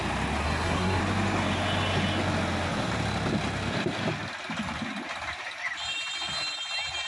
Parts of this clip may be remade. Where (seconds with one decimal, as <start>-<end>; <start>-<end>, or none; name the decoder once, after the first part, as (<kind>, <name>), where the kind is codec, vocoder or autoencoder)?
0.4-1.0 (codec, SNAC)